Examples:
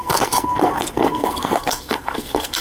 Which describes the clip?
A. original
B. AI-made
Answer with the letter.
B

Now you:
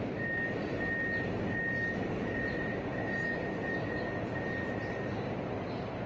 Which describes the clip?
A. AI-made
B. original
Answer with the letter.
B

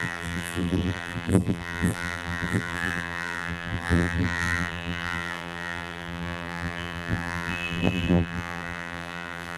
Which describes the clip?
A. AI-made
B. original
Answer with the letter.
A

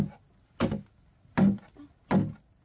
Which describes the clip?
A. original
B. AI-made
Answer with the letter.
A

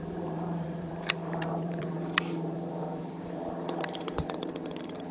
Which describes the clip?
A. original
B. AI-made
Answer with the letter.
B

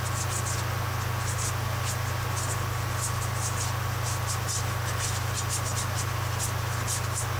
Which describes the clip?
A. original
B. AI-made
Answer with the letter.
A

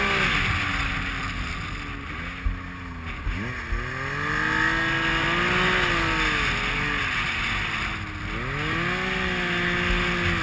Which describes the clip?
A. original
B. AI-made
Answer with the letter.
A